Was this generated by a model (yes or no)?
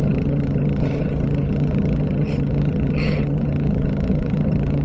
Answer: yes